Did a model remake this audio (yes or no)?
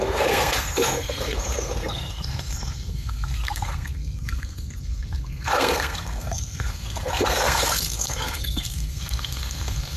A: yes